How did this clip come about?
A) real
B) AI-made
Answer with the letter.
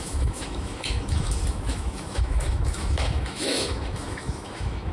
B